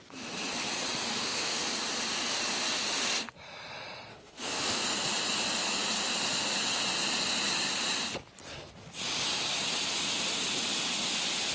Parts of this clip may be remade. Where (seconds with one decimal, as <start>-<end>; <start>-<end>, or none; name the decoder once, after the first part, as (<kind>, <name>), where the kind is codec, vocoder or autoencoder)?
1.1-1.6 (autoencoder, DAC-VAE); 4.1-4.8